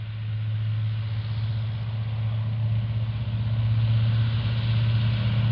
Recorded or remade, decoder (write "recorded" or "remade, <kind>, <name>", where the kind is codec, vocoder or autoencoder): recorded